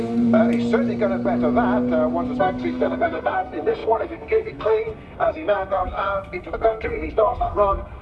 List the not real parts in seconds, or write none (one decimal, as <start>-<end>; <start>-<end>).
0.0-0.4; 2.4-8.0